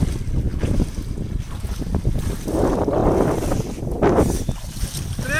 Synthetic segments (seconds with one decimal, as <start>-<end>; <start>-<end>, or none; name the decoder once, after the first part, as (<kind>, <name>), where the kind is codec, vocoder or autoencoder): none